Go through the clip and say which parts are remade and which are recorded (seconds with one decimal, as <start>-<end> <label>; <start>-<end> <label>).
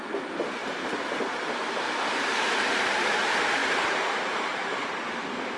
0.0-5.6 remade